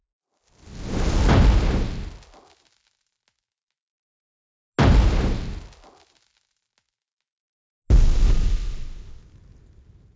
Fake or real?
real